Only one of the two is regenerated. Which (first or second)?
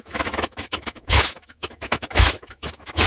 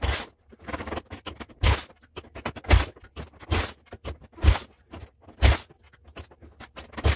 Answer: first